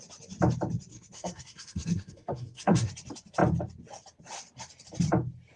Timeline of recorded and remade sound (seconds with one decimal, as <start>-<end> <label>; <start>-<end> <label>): 0.0-0.9 recorded; 0.9-2.9 remade; 2.9-5.6 recorded